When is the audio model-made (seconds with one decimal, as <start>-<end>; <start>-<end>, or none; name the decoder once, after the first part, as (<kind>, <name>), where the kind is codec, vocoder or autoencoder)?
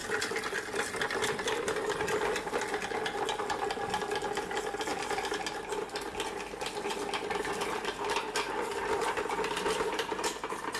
none